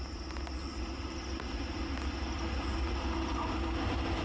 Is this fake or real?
real